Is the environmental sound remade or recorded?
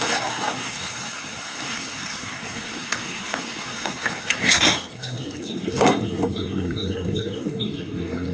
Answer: remade